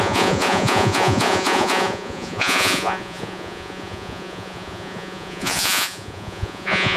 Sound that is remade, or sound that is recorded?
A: remade